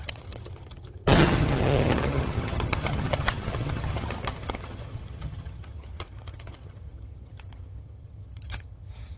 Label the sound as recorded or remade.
remade